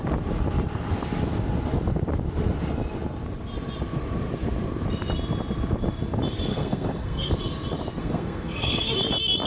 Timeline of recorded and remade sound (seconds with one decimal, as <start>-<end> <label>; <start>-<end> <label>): 0.0-6.5 recorded; 6.5-7.3 remade; 7.3-8.0 recorded; 8.0-8.9 remade; 8.9-9.5 recorded